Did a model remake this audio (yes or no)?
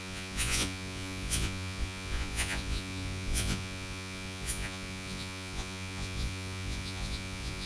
yes